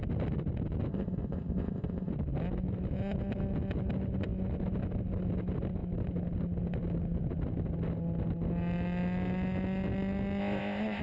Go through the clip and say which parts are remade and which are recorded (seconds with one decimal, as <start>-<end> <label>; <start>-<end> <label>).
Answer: 0.0-0.9 recorded; 0.9-2.1 remade; 2.1-10.4 recorded; 10.4-11.0 remade